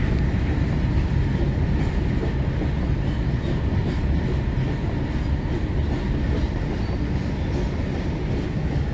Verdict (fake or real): real